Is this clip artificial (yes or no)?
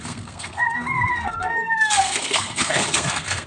yes